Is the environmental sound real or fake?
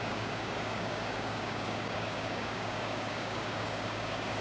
fake